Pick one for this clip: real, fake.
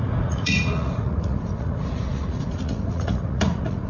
fake